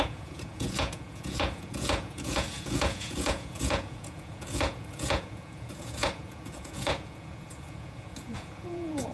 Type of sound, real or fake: fake